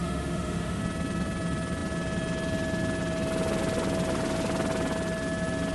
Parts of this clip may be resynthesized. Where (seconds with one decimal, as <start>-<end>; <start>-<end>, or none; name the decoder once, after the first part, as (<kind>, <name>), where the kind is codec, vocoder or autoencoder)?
0.0-0.8 (autoencoder, DAC-VAE)